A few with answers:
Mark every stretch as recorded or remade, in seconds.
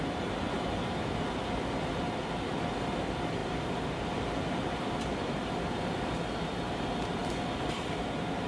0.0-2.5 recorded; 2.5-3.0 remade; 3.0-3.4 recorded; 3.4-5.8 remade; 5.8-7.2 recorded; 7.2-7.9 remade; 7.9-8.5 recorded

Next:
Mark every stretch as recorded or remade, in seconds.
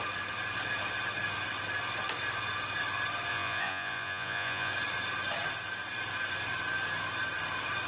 0.0-3.3 recorded; 3.3-4.7 remade; 4.7-7.9 recorded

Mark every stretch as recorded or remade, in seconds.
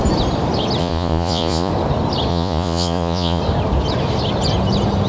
0.0-0.8 recorded; 0.8-1.7 remade; 1.7-2.3 recorded; 2.3-3.4 remade; 3.4-5.1 recorded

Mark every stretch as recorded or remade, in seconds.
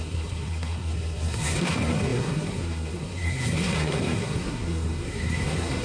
0.0-5.8 remade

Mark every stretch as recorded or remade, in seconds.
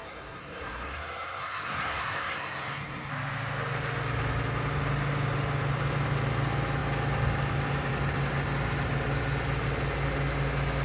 0.0-3.1 remade; 3.1-10.8 recorded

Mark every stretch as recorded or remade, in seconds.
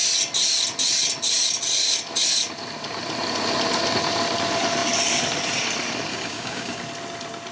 0.0-6.1 recorded; 6.1-6.8 remade; 6.8-7.5 recorded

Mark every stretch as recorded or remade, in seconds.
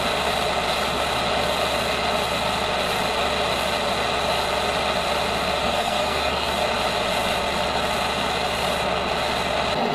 0.0-5.6 recorded; 5.6-6.5 remade; 6.5-9.9 recorded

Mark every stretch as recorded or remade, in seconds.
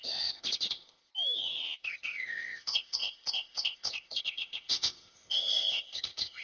0.0-1.1 remade; 1.1-1.8 recorded; 1.8-6.4 remade